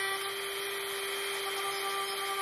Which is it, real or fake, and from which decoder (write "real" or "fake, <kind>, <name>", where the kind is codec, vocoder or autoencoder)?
real